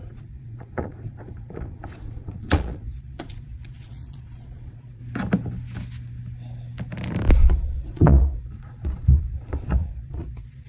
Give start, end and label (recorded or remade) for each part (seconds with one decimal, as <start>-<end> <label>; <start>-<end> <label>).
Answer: 0.0-5.0 remade; 5.0-7.3 recorded; 7.3-10.7 remade